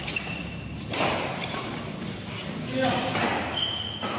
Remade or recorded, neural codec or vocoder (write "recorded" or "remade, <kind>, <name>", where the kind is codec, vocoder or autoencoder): recorded